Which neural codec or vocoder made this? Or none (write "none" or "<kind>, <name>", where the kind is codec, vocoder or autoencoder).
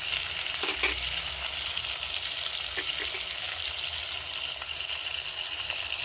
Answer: none